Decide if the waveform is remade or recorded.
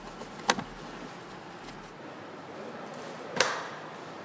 recorded